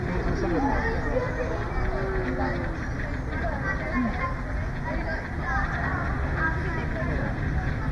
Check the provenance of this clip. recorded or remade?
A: recorded